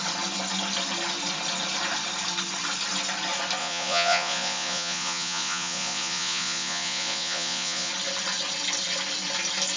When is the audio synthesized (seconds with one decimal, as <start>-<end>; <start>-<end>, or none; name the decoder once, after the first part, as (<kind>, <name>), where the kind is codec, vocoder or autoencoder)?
3.6-7.9 (vocoder, Vocos)